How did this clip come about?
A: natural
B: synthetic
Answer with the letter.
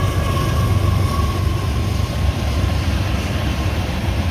A